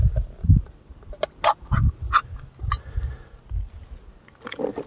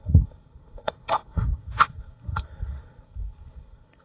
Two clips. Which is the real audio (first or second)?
first